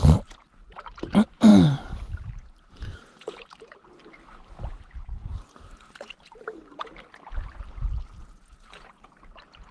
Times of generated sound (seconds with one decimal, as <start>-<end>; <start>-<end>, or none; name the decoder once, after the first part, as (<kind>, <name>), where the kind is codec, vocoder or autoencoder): 1.5-3.9 (vocoder, BigVGAN v2); 5.2-7.1

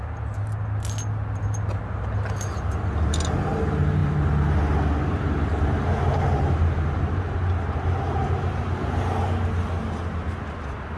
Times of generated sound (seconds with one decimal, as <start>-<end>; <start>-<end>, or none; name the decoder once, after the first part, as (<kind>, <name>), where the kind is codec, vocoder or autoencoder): none

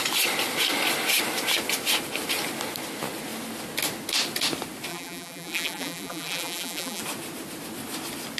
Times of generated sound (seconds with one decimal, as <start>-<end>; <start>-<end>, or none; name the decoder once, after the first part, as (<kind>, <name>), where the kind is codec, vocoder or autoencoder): 4.9-7.0 (vocoder, BigVGAN v2)

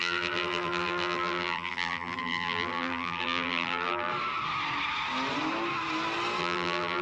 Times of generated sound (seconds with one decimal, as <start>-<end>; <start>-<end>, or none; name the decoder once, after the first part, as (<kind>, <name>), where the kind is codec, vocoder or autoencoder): 0.0-4.1 (vocoder, BigVGAN v2); 6.4-7.0

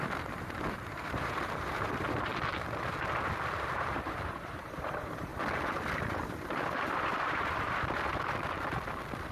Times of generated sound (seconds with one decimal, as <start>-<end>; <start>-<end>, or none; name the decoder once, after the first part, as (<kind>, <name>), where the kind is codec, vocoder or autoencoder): 0.0-2.3 (vocoder, BigVGAN v2); 3.9-5.3; 7.6-8.1

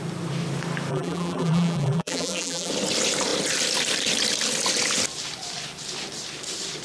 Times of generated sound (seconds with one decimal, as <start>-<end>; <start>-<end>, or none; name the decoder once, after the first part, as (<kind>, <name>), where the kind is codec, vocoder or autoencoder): 0.9-2.7 (vocoder, BigVGAN v2)

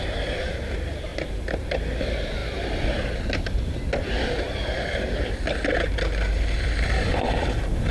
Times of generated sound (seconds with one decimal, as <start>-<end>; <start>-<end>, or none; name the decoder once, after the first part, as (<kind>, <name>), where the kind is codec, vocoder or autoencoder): none

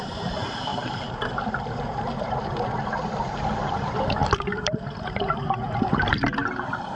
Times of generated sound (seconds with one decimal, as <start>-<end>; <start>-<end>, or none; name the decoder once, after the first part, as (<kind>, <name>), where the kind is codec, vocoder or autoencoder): 0.0-7.0 (vocoder, BigVGAN v2)